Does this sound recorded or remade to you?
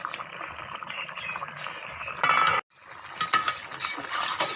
recorded